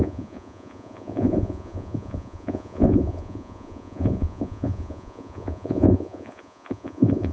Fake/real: fake